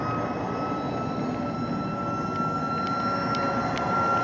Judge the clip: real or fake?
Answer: real